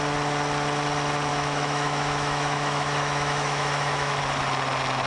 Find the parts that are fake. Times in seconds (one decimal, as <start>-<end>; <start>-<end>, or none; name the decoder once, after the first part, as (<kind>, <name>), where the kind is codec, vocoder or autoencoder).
1.3-4.2 (autoencoder, DAC-VAE)